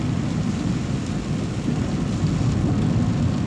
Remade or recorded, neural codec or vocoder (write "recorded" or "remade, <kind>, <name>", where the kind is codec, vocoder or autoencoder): recorded